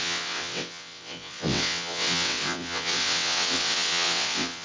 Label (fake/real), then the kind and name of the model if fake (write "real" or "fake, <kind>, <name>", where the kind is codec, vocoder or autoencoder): fake, vocoder, WaveNeXt